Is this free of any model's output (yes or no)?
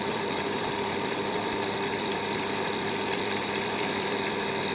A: no